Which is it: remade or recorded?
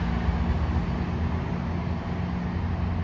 recorded